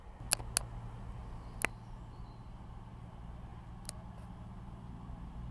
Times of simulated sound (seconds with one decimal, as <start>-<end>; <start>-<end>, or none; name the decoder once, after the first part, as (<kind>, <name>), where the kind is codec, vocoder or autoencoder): none